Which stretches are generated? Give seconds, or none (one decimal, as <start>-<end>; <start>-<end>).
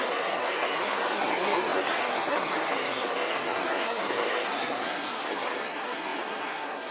0.0-6.9